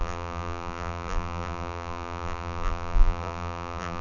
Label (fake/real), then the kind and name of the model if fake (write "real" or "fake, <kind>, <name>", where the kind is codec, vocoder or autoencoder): fake, vocoder, BigVGAN v2